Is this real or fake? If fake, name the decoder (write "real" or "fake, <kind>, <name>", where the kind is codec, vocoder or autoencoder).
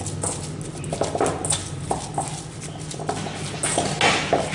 real